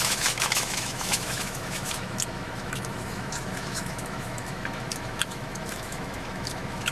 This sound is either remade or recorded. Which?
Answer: remade